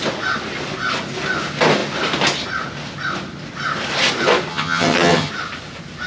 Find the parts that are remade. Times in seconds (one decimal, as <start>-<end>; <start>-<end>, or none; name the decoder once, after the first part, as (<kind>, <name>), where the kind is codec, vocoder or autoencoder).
4.5-5.3 (vocoder, HiFi-GAN)